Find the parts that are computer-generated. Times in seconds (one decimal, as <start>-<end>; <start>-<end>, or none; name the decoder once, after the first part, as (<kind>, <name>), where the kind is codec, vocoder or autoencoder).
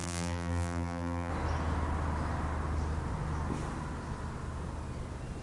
0.0-1.3 (vocoder, BigVGAN v2)